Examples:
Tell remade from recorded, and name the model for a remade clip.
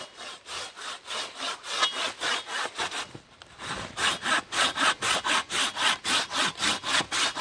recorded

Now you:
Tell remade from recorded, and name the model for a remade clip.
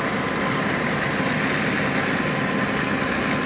recorded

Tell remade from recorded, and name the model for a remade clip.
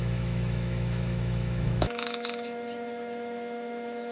remade, autoencoder, DAC-VAE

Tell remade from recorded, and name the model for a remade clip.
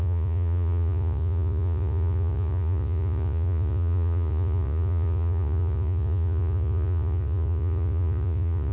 remade, vocoder, Vocos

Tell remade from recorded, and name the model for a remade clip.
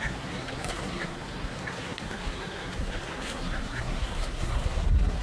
remade, codec, SNAC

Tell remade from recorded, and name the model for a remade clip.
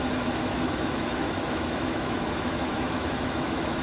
remade, autoencoder, DAC-VAE